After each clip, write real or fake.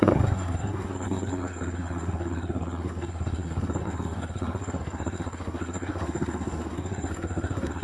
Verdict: fake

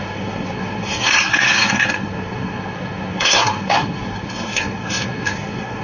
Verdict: fake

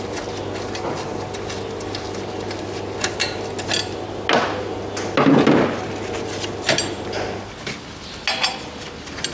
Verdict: real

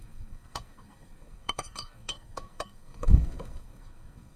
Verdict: fake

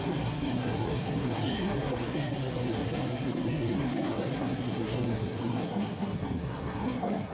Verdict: fake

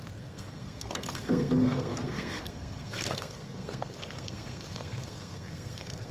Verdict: fake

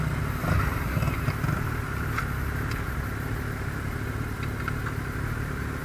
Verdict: real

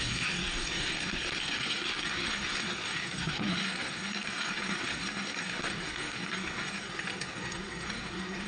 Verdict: fake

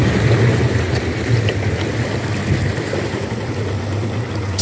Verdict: real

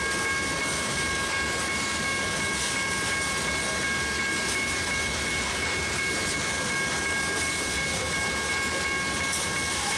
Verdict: real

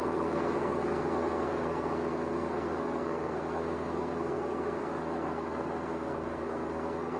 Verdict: fake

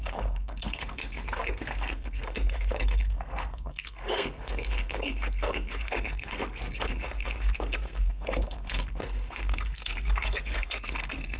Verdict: fake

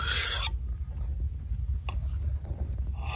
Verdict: real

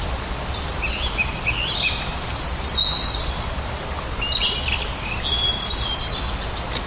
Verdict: real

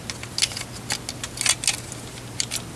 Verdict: real